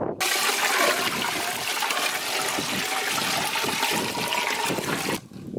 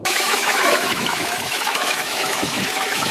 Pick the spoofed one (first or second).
second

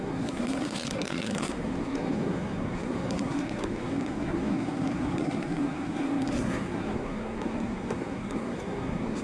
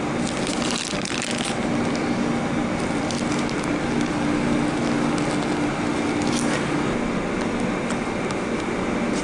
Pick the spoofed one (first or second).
first